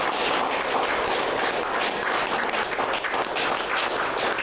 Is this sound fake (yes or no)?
no